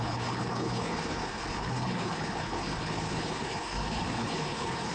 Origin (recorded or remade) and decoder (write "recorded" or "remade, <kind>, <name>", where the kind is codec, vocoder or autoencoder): remade, codec, HILCodec